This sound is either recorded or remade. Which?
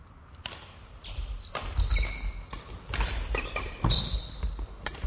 recorded